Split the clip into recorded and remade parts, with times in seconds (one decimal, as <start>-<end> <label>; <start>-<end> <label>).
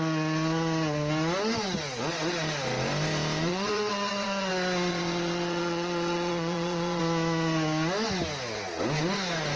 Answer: 0.0-3.5 recorded; 3.5-4.5 remade; 4.5-4.9 recorded; 4.9-7.0 remade; 7.0-9.6 recorded